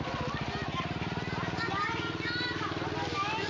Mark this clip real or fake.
real